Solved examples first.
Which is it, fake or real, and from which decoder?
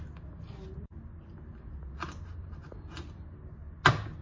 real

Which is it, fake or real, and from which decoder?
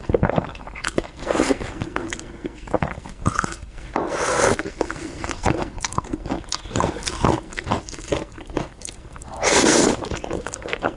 fake, codec, SNAC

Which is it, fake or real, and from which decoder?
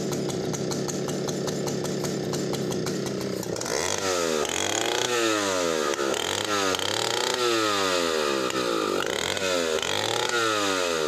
real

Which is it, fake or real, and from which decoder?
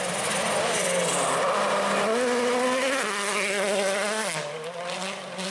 real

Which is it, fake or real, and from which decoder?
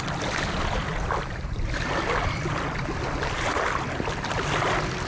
real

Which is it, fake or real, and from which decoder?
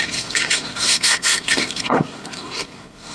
fake, codec, SNAC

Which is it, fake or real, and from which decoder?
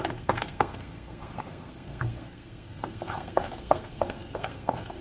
fake, codec, SNAC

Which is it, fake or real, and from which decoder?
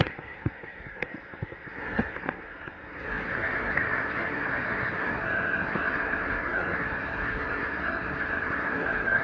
fake, codec, SNAC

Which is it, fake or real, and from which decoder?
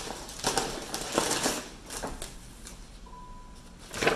real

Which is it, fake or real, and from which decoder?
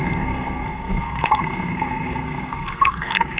fake, codec, SNAC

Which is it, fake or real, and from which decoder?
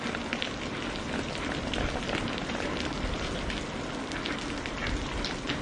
real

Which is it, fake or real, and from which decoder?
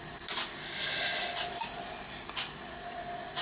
real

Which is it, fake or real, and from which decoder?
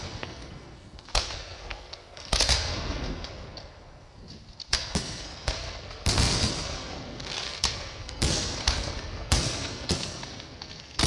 fake, codec, SNAC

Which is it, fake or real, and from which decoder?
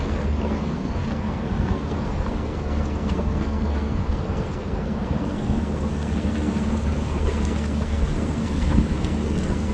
fake, codec, SNAC